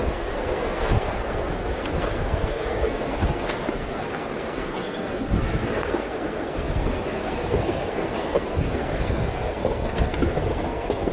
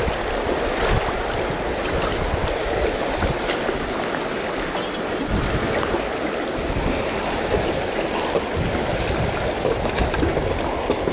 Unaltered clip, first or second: second